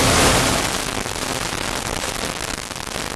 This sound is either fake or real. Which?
real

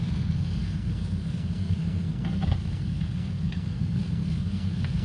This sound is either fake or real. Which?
fake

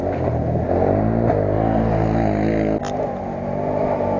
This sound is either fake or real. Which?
real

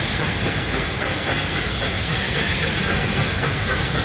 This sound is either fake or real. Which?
fake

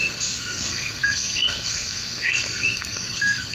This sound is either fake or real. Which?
fake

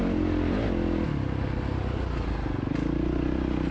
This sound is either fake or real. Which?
real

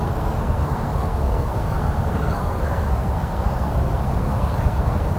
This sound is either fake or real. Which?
fake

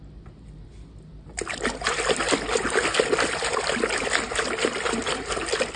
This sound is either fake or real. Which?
real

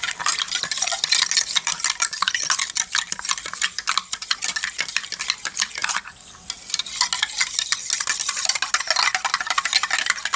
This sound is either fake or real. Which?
real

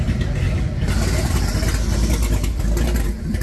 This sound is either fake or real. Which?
real